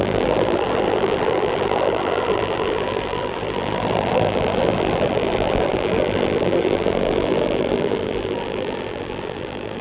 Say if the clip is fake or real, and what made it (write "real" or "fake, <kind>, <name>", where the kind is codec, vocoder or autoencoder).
fake, vocoder, BigVGAN v2